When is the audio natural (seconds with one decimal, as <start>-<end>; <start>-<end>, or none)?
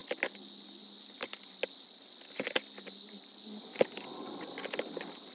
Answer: 0.0-5.3